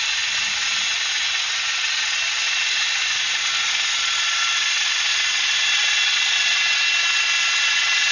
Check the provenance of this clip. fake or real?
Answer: real